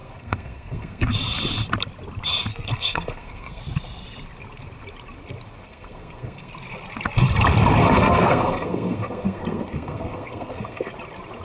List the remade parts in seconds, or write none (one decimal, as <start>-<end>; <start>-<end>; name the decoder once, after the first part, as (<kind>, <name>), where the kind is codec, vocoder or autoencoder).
0.0-1.0 (codec, SNAC); 2.5-3.6; 5.6-6.5; 7.8-10.9